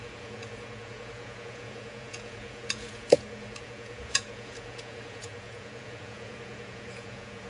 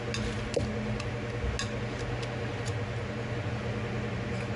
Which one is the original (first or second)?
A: second